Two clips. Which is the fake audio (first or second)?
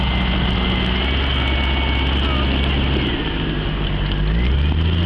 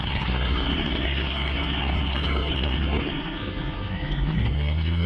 second